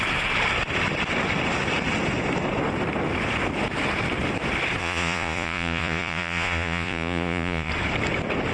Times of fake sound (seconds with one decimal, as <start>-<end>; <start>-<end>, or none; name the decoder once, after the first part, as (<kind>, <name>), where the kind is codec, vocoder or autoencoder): 4.8-7.7 (vocoder, Vocos)